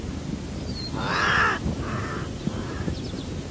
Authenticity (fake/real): real